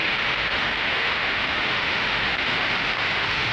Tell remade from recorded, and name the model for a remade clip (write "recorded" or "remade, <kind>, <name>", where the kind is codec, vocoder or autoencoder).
remade, autoencoder, DAC-VAE